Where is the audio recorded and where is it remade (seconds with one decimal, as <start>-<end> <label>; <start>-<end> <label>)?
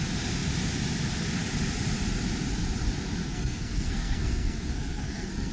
0.0-3.2 recorded; 3.2-5.5 remade